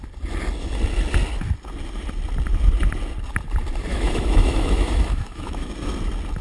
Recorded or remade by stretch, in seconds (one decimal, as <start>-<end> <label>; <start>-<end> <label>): 0.0-3.9 recorded; 3.9-5.7 remade; 5.7-6.4 recorded

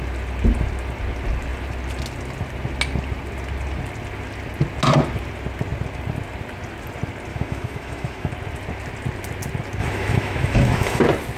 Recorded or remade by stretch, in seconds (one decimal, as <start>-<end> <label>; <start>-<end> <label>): 0.0-7.3 recorded; 7.3-8.3 remade; 8.3-9.8 recorded; 9.8-11.0 remade; 11.0-11.4 recorded

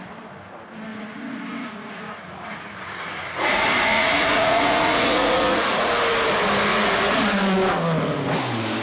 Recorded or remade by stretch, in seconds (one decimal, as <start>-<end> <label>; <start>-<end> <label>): 0.0-0.9 recorded; 0.9-5.9 remade; 5.9-6.7 recorded; 6.7-7.4 remade; 7.4-8.8 recorded

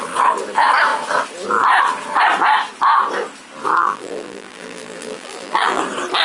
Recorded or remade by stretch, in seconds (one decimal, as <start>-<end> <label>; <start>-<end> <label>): 0.0-3.8 recorded; 3.8-5.8 remade; 5.8-6.2 recorded